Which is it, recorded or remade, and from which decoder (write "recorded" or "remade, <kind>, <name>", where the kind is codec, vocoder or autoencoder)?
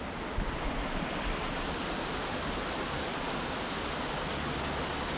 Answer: recorded